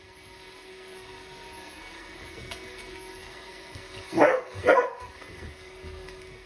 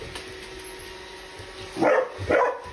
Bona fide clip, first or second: second